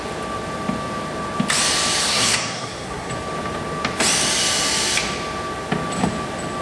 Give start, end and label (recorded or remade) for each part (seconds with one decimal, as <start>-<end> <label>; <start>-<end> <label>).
0.0-2.0 recorded; 2.0-3.1 remade; 3.1-6.6 recorded